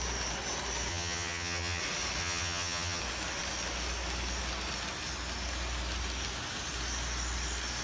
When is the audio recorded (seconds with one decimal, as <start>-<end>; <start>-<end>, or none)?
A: 0.0-0.9; 1.8-2.2; 3.0-7.8